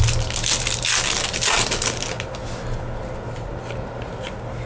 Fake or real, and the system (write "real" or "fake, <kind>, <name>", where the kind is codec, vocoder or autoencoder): real